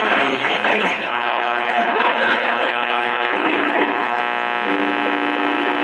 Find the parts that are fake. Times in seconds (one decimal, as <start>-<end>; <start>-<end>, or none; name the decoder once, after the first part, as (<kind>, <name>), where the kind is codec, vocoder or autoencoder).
0.7-4.2 (codec, HILCodec)